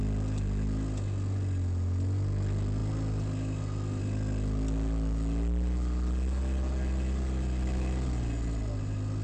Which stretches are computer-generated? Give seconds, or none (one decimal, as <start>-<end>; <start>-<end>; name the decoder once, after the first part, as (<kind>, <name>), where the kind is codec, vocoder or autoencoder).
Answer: none